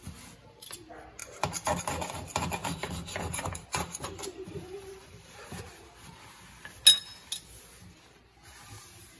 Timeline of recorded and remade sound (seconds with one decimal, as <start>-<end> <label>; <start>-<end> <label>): 0.0-2.6 recorded; 2.6-5.6 remade; 5.6-9.2 recorded